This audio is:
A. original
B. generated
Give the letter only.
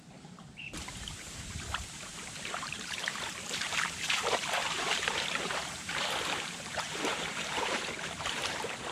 B